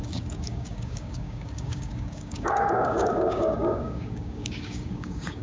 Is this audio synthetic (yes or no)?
yes